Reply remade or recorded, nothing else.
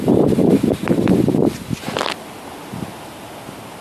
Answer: recorded